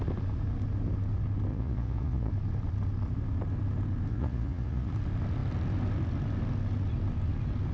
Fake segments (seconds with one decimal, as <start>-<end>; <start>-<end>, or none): 1.5-2.3; 4.1-4.9